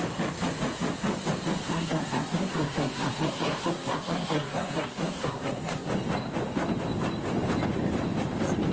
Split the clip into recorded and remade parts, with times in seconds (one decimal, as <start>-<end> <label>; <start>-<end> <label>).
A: 0.0-1.6 recorded; 1.6-5.9 remade; 5.9-8.7 recorded